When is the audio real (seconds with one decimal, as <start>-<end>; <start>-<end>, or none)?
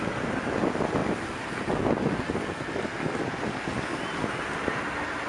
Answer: 0.0-5.3